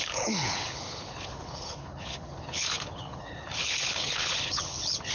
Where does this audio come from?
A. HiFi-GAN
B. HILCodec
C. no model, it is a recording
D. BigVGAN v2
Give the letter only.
B